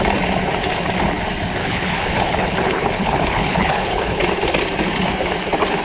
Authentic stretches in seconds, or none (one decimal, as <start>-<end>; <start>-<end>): 0.0-1.6; 4.2-5.8